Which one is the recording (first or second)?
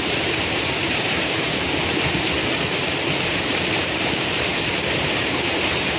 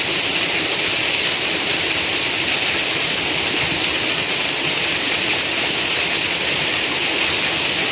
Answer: second